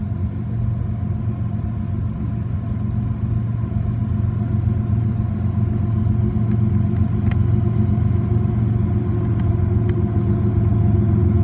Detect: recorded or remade recorded